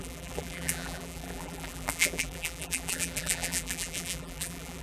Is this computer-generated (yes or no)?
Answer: yes